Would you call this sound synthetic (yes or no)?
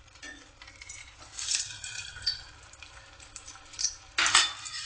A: yes